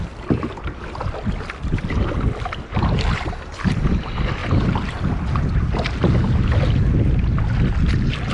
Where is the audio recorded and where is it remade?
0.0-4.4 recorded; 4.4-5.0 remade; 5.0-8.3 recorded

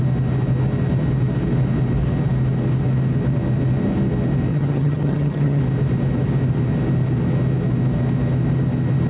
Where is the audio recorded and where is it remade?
0.0-4.5 recorded; 4.5-5.6 remade; 5.6-9.1 recorded